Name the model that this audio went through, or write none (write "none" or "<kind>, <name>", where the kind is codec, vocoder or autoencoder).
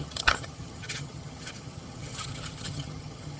vocoder, HiFi-GAN